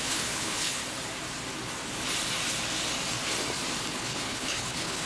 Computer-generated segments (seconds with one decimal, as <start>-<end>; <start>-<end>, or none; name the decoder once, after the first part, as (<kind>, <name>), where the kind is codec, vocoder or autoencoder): 0.0-0.8 (codec, HILCodec); 3.9-5.1